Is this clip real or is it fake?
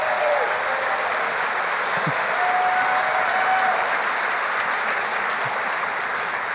real